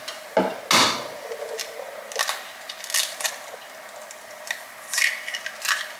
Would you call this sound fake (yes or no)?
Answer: no